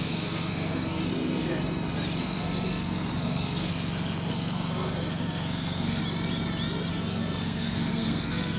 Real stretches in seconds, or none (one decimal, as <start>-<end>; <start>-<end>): 1.0-2.2; 3.7-4.3; 6.0-6.9